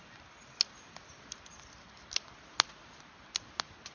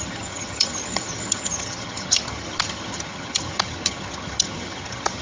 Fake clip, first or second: second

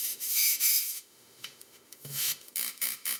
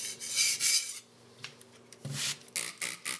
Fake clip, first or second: first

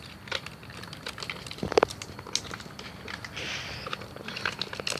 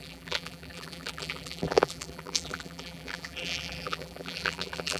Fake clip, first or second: second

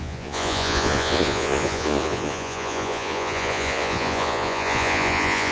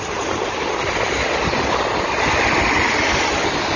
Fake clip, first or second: first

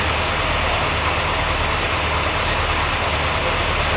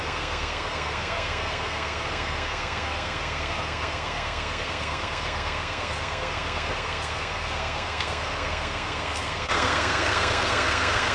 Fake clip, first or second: second